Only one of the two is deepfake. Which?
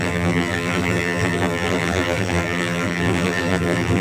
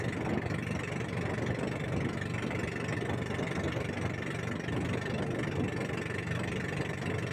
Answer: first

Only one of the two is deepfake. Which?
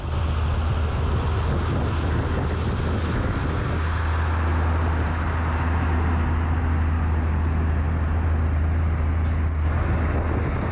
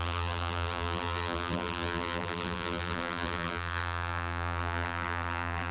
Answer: second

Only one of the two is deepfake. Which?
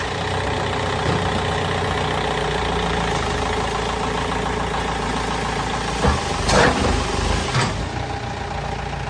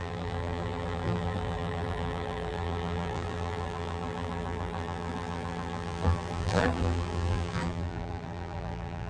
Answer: second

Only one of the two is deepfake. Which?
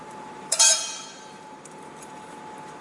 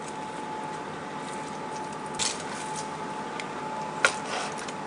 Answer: first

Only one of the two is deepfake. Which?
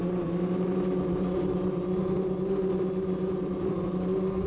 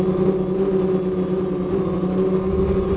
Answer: first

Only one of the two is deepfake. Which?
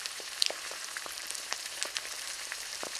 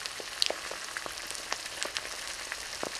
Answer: first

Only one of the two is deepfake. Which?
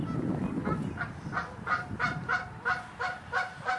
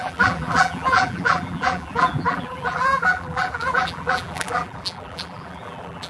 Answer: second